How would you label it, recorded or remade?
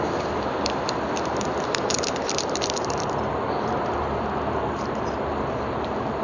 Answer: remade